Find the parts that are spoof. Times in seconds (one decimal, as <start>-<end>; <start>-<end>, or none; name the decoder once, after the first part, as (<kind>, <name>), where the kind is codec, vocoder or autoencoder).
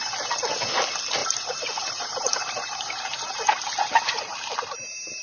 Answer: 1.2-4.3 (vocoder, BigVGAN v2)